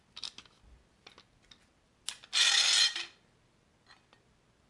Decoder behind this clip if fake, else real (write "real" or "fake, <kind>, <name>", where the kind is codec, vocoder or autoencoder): real